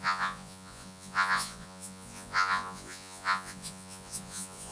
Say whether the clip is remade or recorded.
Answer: remade